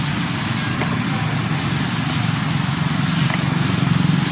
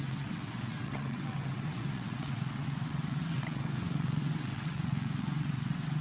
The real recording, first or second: first